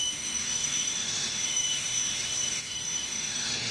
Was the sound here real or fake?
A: fake